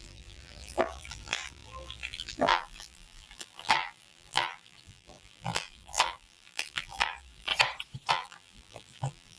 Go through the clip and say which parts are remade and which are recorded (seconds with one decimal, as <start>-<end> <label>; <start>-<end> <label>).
0.0-7.5 remade; 7.5-8.1 recorded; 8.1-9.4 remade